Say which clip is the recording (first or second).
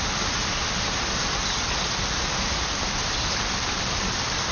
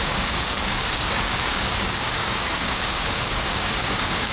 first